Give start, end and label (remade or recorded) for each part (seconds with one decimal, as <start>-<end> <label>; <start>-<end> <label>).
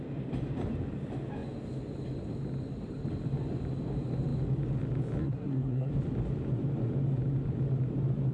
0.0-5.2 recorded; 5.2-5.9 remade; 5.9-8.3 recorded